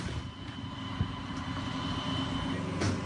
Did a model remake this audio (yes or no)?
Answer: no